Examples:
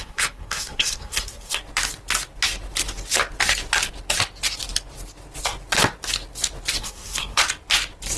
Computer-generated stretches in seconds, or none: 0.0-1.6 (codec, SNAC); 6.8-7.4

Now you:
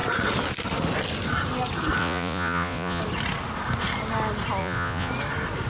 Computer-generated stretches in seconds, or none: 2.0-3.0 (vocoder, Vocos); 4.6-5.1